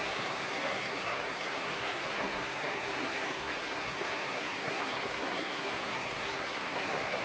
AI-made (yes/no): yes